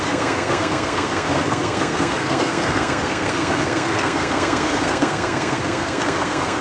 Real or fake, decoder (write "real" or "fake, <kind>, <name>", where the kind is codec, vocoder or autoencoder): fake, codec, SNAC